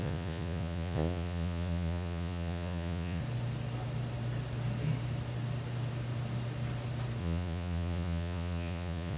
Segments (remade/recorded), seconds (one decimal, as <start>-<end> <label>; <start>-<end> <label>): 0.0-3.2 remade; 3.2-7.2 recorded; 7.2-9.2 remade